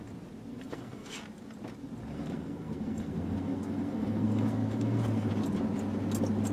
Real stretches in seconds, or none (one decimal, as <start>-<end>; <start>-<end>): 0.0-0.5; 1.2-2.1; 5.3-6.5